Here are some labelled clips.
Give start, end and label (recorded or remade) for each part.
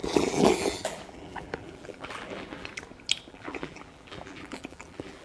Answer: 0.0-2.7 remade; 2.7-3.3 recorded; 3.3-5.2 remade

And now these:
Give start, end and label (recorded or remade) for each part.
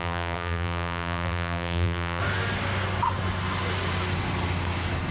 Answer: 0.0-2.2 remade; 2.2-5.1 recorded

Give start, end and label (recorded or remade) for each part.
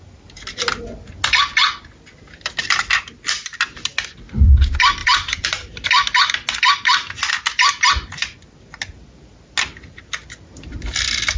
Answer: 0.0-5.0 recorded; 5.0-5.9 remade; 5.9-11.4 recorded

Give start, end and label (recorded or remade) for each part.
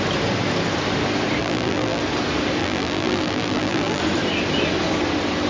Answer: 0.0-1.4 recorded; 1.4-2.0 remade; 2.0-2.6 recorded; 2.6-4.0 remade; 4.0-5.5 recorded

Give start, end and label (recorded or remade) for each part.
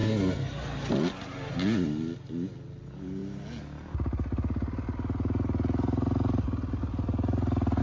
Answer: 0.0-7.8 recorded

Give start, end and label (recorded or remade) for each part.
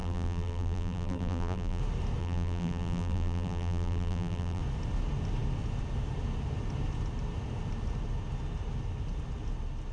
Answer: 0.0-1.8 remade; 1.8-2.2 recorded; 2.2-4.6 remade; 4.6-9.9 recorded